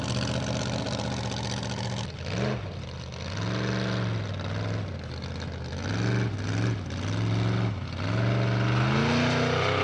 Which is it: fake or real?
real